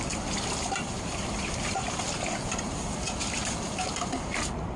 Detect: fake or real fake